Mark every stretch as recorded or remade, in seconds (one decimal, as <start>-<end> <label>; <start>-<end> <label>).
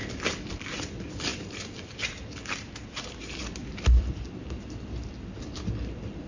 0.0-6.3 recorded